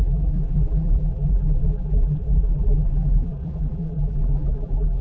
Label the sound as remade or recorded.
remade